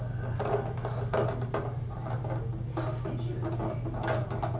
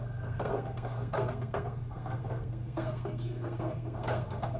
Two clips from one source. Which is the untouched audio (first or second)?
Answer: first